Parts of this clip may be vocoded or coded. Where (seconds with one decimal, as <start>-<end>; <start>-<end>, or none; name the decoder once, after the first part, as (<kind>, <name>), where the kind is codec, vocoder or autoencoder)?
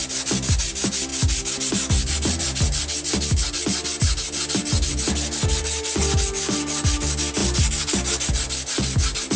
none